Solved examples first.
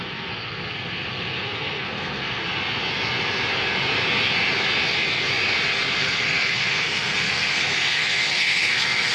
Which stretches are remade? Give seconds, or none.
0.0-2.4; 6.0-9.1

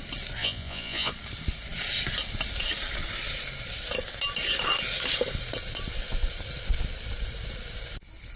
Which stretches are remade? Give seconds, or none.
0.4-1.1

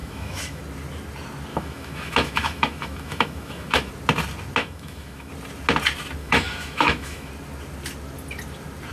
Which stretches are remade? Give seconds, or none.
0.0-0.6; 1.5-3.9; 4.6-5.3; 6.2-7.3

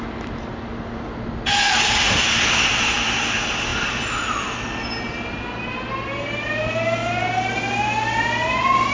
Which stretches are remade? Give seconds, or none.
none

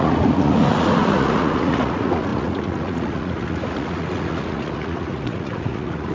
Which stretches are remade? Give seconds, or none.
0.0-6.1

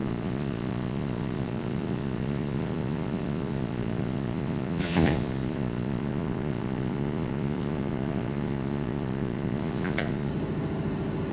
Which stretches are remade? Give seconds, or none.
0.0-10.3